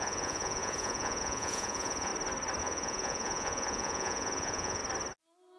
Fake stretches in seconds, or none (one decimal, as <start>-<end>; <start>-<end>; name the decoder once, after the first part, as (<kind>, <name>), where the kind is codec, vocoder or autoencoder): 0.0-2.1 (vocoder, Vocos); 2.6-4.8